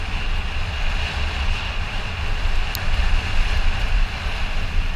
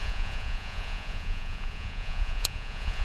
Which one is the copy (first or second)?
second